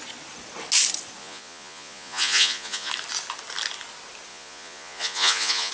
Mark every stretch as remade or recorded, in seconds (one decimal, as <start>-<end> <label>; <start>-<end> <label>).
0.0-1.2 recorded; 1.2-2.9 remade; 2.9-4.3 recorded; 4.3-5.7 remade